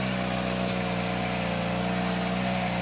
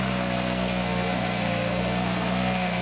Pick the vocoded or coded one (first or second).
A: second